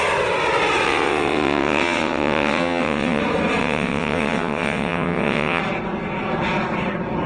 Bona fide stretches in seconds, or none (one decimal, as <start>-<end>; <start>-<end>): 0.0-0.8; 3.2-3.6; 5.6-7.3